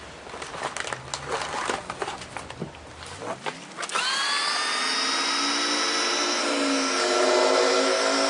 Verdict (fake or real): real